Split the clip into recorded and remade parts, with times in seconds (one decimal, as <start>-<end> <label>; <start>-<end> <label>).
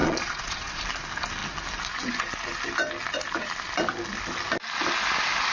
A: 0.0-0.8 remade; 0.8-5.5 recorded